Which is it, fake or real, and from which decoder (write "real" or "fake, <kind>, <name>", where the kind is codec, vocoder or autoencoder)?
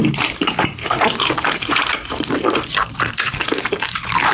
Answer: fake, vocoder, BigVGAN v2